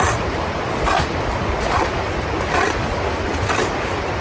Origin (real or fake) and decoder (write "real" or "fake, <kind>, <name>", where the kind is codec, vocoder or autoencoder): real